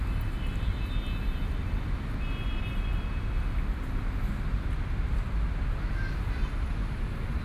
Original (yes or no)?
yes